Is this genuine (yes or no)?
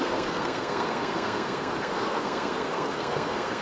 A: no